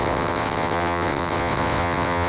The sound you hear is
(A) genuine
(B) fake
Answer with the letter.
B